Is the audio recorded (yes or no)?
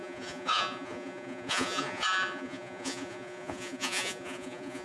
no